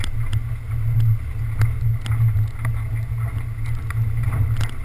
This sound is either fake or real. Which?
real